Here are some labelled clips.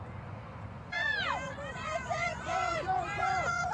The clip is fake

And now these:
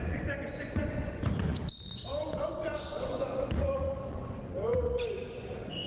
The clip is fake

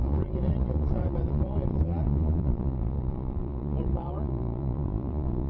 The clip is fake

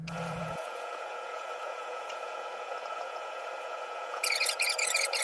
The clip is fake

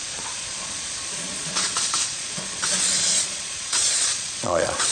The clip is fake